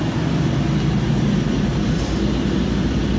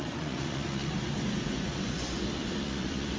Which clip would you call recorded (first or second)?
first